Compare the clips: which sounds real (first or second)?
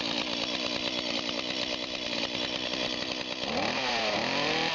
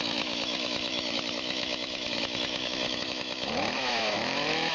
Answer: first